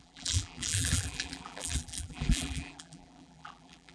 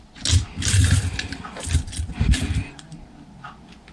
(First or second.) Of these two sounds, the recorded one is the second